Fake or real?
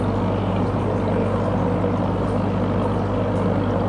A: real